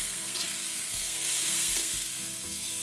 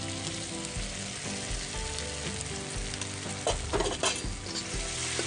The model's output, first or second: first